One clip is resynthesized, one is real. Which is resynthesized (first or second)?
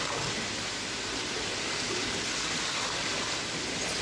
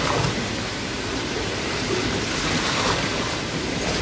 second